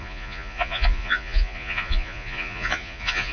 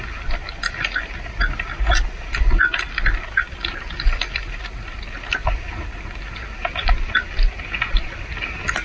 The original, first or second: second